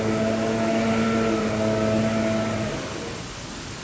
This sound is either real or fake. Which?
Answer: real